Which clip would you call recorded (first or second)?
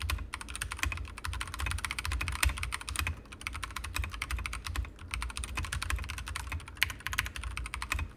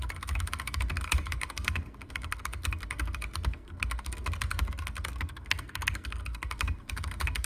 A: first